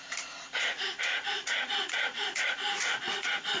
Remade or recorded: remade